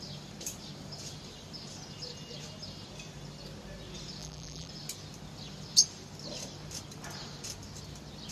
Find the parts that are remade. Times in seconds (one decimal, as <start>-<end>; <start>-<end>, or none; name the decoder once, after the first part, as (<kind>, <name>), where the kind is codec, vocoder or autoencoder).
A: 4.2-4.7 (vocoder, BigVGAN v2)

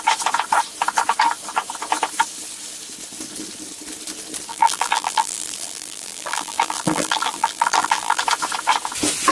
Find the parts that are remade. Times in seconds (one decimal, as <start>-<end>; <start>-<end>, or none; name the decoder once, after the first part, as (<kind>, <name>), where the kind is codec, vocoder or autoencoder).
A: 4.5-8.2 (vocoder, BigVGAN v2)

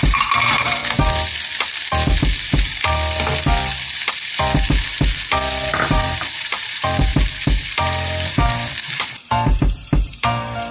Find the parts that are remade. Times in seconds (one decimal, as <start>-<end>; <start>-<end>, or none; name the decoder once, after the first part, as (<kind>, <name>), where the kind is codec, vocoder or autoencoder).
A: 0.0-0.8 (vocoder, BigVGAN v2); 5.7-7.1; 7.8-10.7

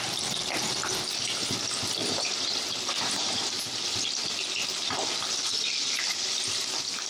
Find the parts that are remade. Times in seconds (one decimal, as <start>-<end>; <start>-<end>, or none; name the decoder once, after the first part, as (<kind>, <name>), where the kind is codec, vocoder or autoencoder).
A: 2.0-4.1 (vocoder, BigVGAN v2)

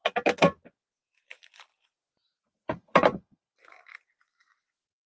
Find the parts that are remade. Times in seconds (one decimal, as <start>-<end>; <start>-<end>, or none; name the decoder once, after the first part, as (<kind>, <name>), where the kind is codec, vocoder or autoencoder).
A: 1.7-3.5 (vocoder, BigVGAN v2)

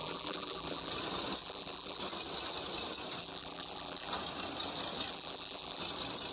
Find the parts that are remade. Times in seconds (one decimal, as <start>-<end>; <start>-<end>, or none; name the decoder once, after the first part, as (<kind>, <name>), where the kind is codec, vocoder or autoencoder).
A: 0.0-0.9 (vocoder, BigVGAN v2); 1.4-2.0; 3.2-4.1; 5.1-5.8

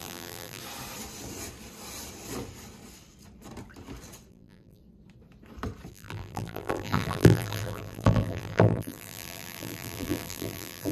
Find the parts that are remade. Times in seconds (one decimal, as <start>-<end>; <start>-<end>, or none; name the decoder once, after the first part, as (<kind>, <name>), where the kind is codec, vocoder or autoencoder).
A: 0.0-0.6 (vocoder, BigVGAN v2); 4.3-4.8; 5.9-10.9

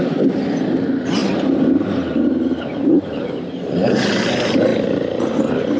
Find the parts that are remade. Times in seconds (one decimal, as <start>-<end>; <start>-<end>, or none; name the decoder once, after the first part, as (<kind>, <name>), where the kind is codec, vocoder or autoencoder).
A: 1.2-4.3 (vocoder, BigVGAN v2)